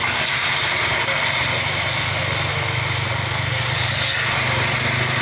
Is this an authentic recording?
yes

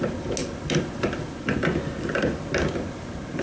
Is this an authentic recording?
yes